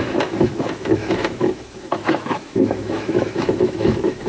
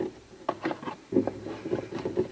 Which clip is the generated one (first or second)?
first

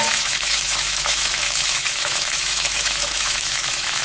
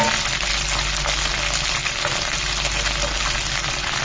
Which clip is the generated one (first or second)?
first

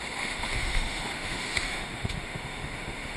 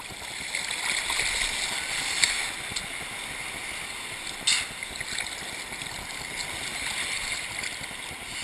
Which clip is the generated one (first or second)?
first